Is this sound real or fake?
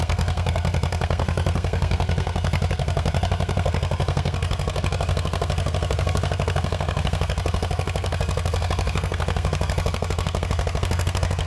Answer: fake